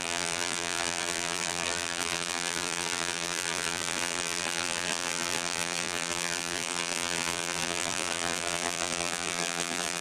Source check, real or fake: fake